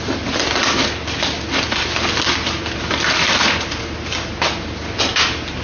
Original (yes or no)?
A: yes